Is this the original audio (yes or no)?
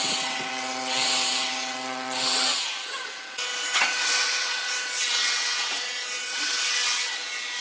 no